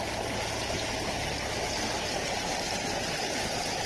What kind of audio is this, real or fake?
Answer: real